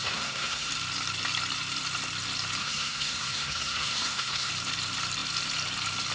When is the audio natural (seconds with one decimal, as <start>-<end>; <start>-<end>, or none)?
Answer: 0.7-2.6; 4.5-6.1